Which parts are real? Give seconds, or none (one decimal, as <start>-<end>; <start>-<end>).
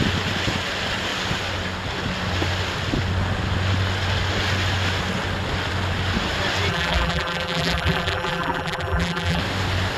0.0-6.7; 9.4-10.0